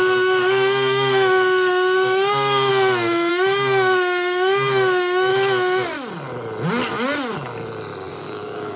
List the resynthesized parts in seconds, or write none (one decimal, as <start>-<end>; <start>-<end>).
0.0-2.7; 3.3-5.3; 8.1-8.8